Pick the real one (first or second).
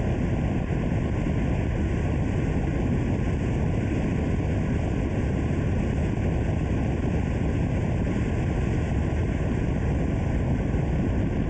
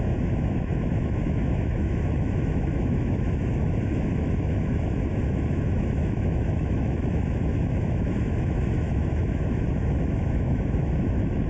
first